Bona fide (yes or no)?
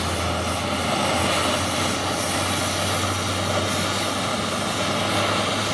yes